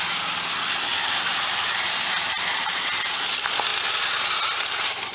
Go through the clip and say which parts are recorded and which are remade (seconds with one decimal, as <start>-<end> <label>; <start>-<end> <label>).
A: 0.0-0.9 recorded; 0.9-2.5 remade; 2.5-5.1 recorded